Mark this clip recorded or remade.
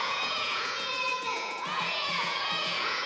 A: remade